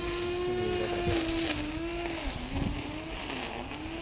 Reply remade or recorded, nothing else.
recorded